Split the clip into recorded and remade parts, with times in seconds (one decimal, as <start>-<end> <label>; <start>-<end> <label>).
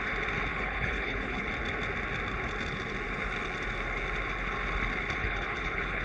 0.0-0.5 recorded; 0.5-1.5 remade; 1.5-5.2 recorded; 5.2-6.0 remade